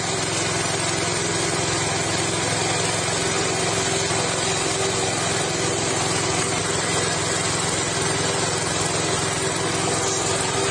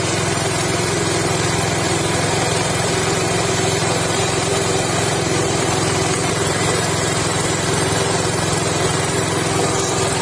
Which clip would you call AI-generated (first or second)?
second